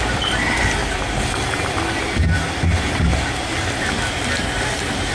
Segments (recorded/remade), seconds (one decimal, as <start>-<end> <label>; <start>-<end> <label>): 0.0-5.1 recorded